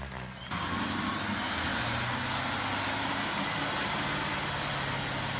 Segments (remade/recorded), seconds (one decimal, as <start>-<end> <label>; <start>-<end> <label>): 0.0-5.4 recorded